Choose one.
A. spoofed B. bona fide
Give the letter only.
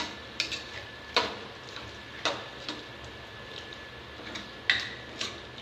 B